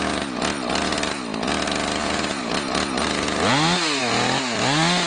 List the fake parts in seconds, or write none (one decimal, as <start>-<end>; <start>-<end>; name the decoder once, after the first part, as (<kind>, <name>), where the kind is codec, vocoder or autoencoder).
none